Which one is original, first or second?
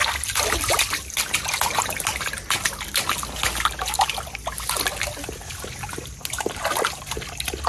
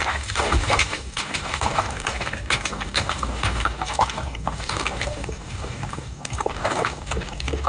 first